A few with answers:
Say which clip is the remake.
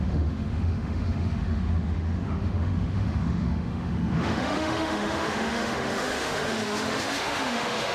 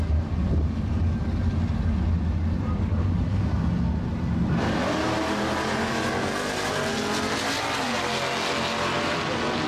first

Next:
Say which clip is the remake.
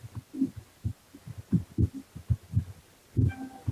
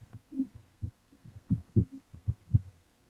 second